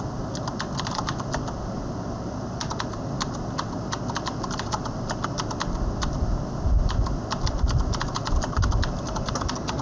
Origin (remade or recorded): recorded